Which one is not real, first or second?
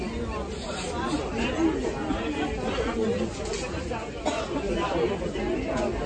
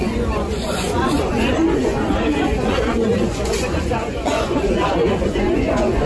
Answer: second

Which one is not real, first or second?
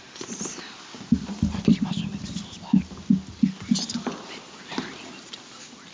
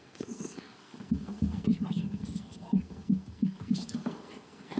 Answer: second